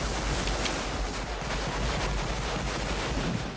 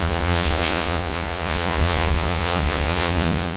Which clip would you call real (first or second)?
first